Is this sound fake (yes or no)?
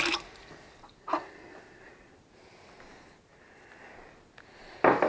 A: no